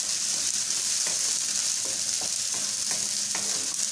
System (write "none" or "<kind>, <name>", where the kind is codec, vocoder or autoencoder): none